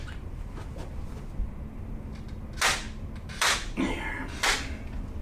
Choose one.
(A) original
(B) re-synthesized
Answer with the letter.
A